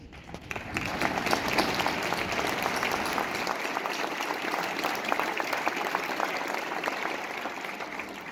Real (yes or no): yes